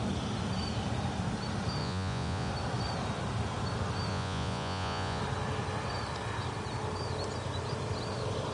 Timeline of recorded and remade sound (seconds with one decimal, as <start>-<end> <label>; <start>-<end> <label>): 0.0-1.8 recorded; 1.8-2.5 remade; 2.5-4.1 recorded; 4.1-5.2 remade; 5.2-8.5 recorded